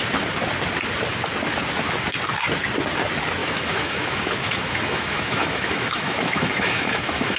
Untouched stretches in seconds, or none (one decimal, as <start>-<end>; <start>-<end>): 0.0-3.4